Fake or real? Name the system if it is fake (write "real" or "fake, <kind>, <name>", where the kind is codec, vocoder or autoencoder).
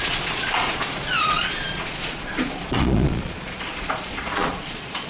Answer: fake, vocoder, Vocos